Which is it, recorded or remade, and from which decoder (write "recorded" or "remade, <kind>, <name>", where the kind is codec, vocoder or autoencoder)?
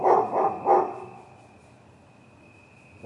recorded